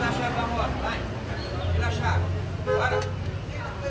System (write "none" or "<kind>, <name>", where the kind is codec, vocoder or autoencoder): none